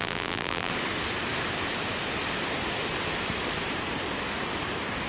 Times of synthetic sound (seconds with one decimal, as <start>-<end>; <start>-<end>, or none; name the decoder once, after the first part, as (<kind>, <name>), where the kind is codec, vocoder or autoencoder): 0.0-0.7 (vocoder, BigVGAN v2)